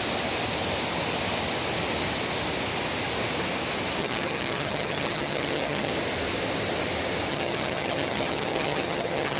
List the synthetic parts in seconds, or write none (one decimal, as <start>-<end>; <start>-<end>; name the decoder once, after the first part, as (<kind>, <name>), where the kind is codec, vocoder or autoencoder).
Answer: 4.0-5.9 (vocoder, HiFi-GAN); 7.3-9.4